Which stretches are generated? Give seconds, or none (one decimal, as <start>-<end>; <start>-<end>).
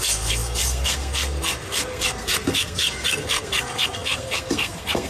0.0-5.1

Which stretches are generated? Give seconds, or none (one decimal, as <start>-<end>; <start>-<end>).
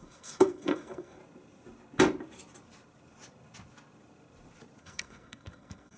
0.0-1.2; 4.8-6.0